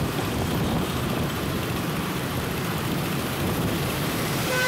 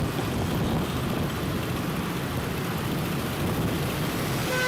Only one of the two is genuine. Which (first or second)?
second